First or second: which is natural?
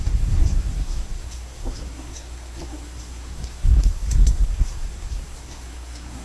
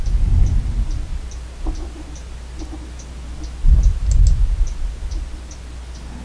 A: second